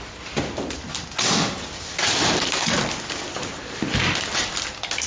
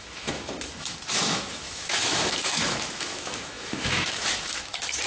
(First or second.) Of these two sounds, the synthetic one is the second